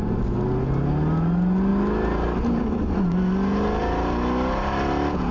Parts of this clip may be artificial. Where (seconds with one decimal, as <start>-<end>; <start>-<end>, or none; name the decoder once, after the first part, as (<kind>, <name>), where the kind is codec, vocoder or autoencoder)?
none